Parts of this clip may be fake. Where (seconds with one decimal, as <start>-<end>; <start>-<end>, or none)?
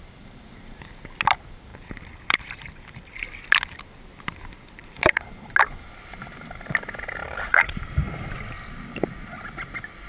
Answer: 1.7-3.3; 4.8-5.5; 7.2-8.3